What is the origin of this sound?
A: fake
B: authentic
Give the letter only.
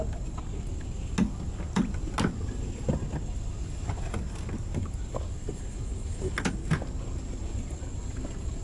B